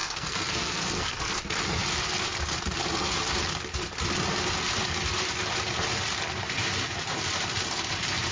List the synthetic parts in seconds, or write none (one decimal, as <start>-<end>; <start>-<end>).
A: 0.0-1.4